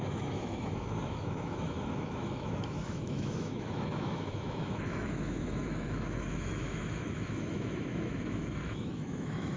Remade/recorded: remade